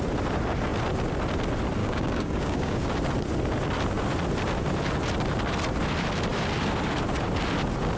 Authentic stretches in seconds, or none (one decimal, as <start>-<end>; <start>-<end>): 0.0-1.8; 2.8-8.0